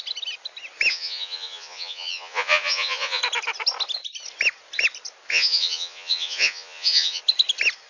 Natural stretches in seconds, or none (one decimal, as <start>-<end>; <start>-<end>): 0.0-0.9; 3.2-5.3; 7.2-7.9